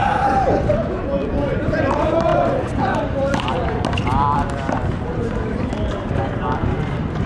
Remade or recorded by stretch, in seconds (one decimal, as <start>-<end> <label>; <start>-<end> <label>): 0.0-1.2 recorded; 1.2-1.9 remade; 1.9-2.3 recorded; 2.3-5.7 remade; 5.7-7.3 recorded